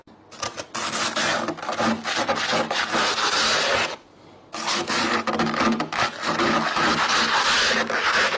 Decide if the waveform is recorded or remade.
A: recorded